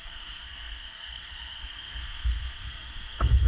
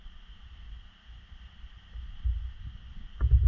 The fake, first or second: first